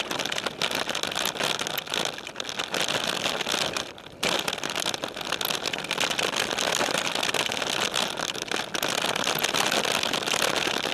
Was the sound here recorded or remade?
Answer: recorded